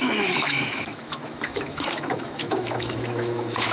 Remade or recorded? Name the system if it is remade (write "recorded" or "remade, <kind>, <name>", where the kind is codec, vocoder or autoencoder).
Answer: remade, autoencoder, DAC-VAE